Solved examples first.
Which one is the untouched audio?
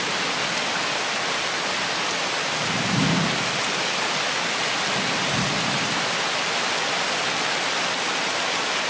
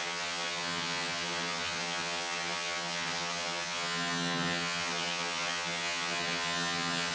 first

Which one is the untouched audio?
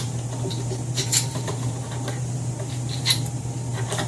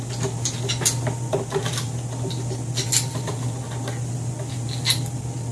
second